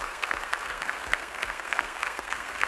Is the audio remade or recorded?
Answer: remade